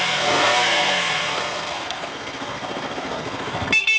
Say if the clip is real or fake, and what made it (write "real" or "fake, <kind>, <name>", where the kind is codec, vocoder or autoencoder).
fake, codec, SNAC